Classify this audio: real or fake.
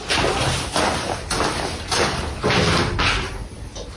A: real